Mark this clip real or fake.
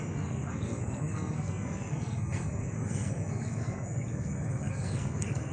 fake